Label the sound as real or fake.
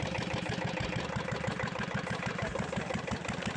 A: real